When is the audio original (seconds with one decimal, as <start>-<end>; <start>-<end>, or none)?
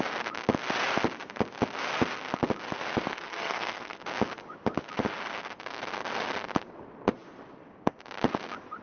0.0-3.1; 4.0-8.8